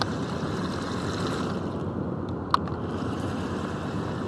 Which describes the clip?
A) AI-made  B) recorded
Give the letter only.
B